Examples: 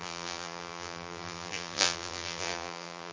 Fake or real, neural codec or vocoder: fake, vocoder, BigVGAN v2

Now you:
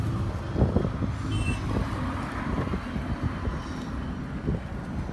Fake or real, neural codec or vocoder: real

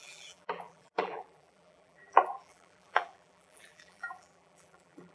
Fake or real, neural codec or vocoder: fake, vocoder, BigVGAN v2